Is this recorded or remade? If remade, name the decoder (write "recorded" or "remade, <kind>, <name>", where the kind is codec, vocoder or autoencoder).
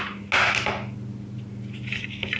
recorded